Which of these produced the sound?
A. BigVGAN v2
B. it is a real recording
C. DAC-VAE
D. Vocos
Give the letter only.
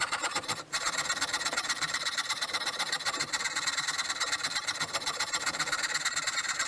A